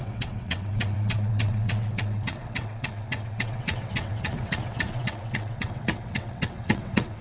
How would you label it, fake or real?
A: fake